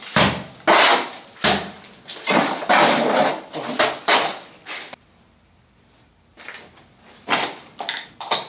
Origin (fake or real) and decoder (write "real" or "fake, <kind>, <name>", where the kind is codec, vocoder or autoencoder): real